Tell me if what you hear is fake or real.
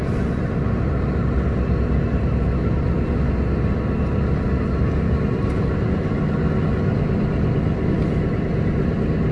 real